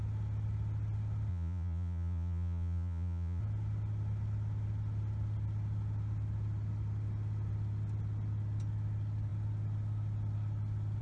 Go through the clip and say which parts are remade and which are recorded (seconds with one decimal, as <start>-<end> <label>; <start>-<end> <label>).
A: 0.0-1.3 recorded; 1.3-3.4 remade; 3.4-11.0 recorded